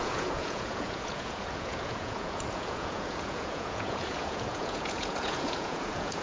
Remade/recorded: remade